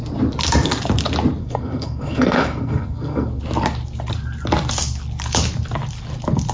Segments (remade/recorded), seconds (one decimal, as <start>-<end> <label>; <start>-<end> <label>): 0.0-1.4 recorded; 1.4-3.4 remade; 3.4-6.5 recorded